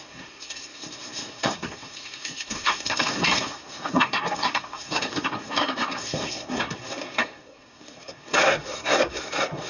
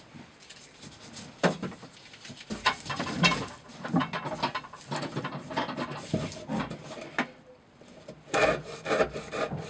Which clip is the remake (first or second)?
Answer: first